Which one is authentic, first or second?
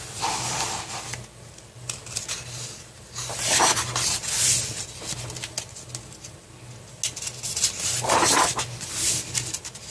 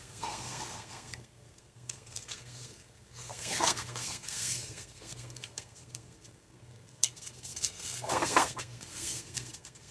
first